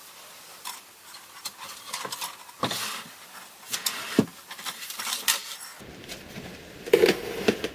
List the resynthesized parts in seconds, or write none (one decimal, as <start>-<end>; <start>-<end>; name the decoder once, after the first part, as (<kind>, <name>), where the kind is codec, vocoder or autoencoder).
0.0-5.4 (vocoder, BigVGAN v2); 5.9-7.7